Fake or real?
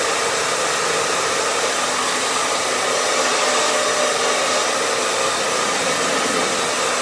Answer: real